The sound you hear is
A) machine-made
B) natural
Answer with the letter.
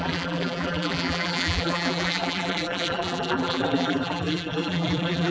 A